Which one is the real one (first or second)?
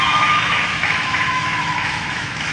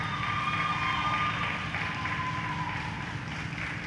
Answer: second